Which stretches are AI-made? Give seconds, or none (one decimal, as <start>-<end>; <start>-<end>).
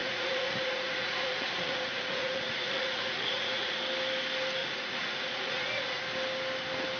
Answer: 0.0-3.8; 4.6-6.0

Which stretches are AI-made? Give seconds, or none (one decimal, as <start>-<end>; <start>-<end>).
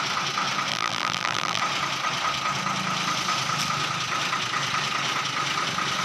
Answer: 0.7-1.6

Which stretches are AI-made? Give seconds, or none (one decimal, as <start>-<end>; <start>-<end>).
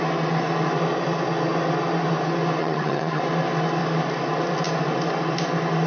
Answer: 2.6-3.2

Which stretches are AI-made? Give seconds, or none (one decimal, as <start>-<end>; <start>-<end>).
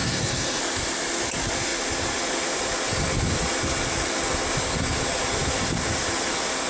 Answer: 0.0-0.6